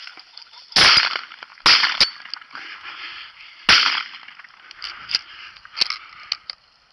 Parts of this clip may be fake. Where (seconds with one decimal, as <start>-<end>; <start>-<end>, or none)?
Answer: none